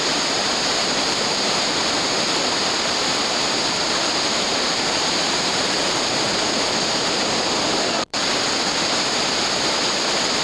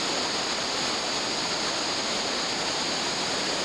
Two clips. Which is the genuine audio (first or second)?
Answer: second